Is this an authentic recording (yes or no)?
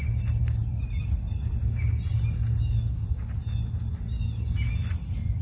yes